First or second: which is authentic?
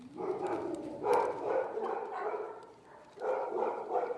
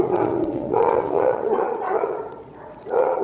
first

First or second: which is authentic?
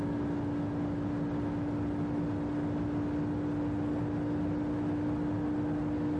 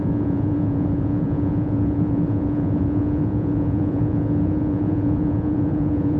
first